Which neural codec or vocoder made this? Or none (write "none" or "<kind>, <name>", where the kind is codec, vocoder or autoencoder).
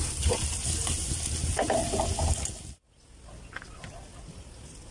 none